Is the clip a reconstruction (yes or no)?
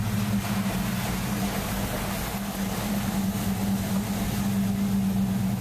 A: no